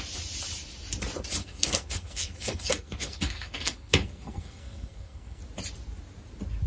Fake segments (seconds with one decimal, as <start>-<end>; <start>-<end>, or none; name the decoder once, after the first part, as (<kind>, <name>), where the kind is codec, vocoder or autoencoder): 1.4-5.4 (codec, SNAC)